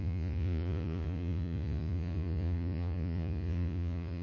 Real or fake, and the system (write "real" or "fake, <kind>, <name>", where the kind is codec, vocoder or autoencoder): fake, vocoder, Vocos